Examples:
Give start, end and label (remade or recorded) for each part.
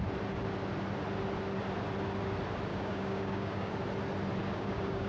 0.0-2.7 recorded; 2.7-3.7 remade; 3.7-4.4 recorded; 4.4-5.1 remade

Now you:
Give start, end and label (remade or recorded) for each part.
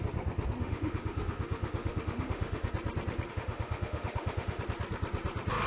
0.0-0.6 recorded; 0.6-2.7 remade; 2.7-3.3 recorded; 3.3-4.6 remade; 4.6-5.7 recorded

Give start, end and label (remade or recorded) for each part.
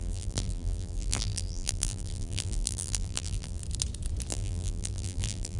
0.0-3.6 remade; 3.6-4.3 recorded; 4.3-5.6 remade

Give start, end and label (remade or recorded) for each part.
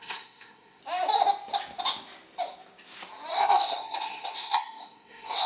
0.0-0.8 remade; 0.8-3.3 recorded; 3.3-5.5 remade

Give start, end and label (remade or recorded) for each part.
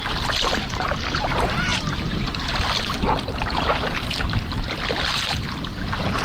0.0-1.7 recorded; 1.7-5.4 remade; 5.4-6.2 recorded